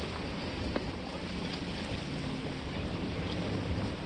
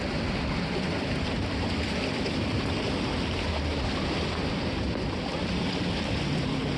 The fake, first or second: second